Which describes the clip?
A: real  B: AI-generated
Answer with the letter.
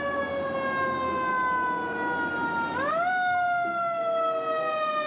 A